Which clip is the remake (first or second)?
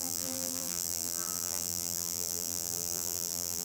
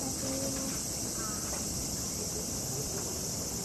first